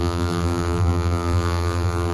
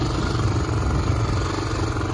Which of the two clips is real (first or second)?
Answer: second